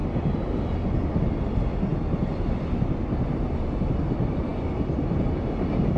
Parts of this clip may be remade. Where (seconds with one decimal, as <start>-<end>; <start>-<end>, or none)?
none